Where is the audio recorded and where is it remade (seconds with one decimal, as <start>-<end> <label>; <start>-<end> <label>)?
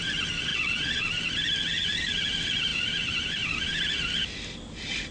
0.0-0.5 recorded; 0.5-1.0 remade; 1.0-5.1 recorded